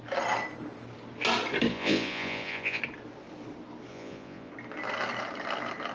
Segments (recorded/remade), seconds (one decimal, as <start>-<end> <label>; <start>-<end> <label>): 0.0-1.7 recorded; 1.7-2.8 remade; 2.8-3.9 recorded; 3.9-4.5 remade; 4.5-5.9 recorded